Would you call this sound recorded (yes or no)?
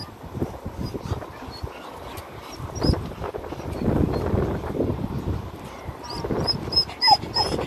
yes